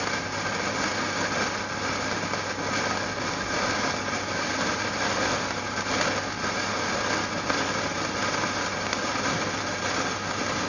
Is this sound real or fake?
real